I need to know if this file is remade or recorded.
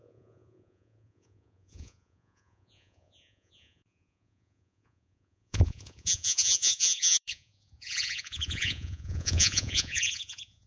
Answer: remade